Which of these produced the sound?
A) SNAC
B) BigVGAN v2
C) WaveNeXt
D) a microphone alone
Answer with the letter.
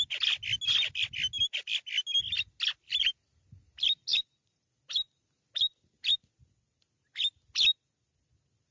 D